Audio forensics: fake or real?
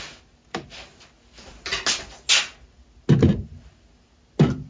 real